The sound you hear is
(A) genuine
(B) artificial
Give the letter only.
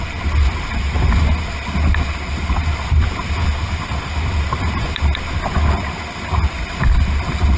A